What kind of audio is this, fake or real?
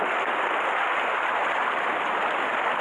real